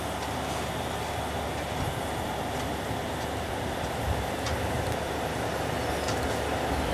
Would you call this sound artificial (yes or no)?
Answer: no